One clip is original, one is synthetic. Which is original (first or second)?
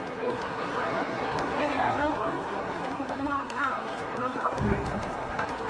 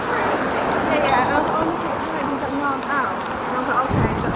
second